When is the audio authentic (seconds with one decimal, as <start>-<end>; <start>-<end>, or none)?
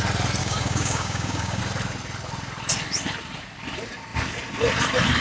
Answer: 0.0-0.4; 1.6-5.2